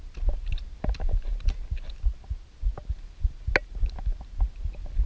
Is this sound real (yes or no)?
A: yes